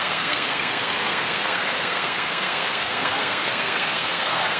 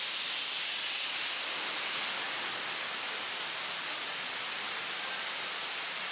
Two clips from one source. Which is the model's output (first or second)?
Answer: first